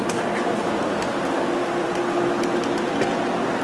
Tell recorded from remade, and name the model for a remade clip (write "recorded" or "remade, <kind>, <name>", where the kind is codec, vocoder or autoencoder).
recorded